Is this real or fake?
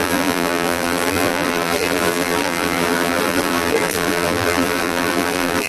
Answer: fake